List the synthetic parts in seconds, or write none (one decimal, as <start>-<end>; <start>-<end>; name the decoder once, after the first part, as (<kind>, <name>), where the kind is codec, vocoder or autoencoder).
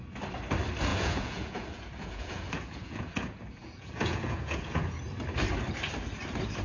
0.9-4.9 (vocoder, Vocos)